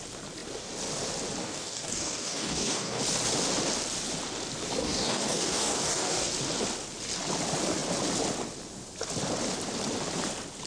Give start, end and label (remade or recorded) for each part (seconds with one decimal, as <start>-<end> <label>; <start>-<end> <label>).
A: 0.0-1.4 recorded; 1.4-3.0 remade; 3.0-4.8 recorded; 4.8-6.3 remade; 6.3-10.7 recorded